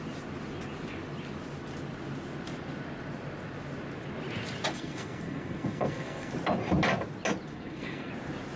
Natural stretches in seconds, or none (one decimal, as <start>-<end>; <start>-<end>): 0.0-4.7; 6.3-7.5; 8.1-8.6